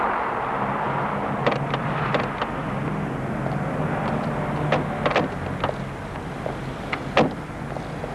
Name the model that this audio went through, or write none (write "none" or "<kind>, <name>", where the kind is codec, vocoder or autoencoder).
none